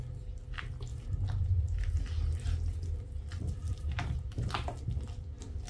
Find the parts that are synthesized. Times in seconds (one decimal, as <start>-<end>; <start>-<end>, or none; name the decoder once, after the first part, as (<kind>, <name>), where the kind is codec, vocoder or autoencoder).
0.9-1.9 (vocoder, BigVGAN v2); 3.6-4.5